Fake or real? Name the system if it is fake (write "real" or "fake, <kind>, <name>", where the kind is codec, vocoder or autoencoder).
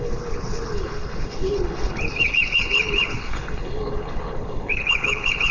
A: fake, codec, HILCodec